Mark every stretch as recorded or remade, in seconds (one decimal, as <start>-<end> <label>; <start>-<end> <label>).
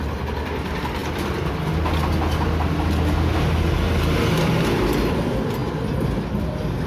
0.0-6.9 recorded